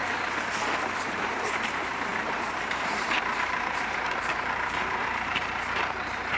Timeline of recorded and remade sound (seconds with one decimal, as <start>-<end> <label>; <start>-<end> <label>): 0.0-1.0 recorded; 1.0-6.4 remade